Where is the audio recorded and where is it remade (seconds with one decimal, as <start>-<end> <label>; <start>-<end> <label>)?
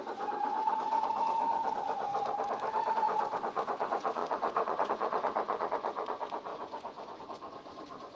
0.0-2.1 remade; 2.1-2.9 recorded; 2.9-8.2 remade